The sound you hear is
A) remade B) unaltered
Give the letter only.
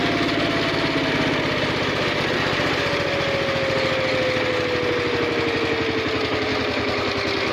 B